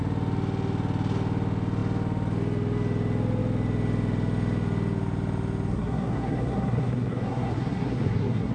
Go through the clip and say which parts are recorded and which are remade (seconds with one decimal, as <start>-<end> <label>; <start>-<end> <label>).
0.0-5.7 recorded; 5.7-8.5 remade